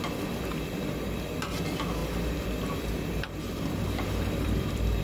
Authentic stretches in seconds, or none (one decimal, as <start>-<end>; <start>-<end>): 0.0-2.0